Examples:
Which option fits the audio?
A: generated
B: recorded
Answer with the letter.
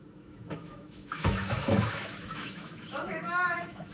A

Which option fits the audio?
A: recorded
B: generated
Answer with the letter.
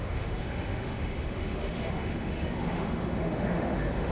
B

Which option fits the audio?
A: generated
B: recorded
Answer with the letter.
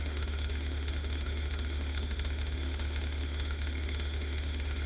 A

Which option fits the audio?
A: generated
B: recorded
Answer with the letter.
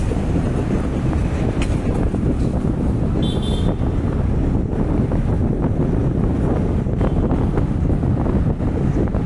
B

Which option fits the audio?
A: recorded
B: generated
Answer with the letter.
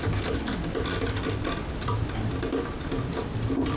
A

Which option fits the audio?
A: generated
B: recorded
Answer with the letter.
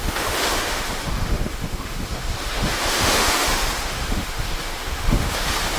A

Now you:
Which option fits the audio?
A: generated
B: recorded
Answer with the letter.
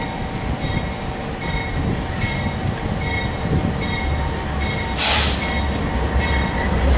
B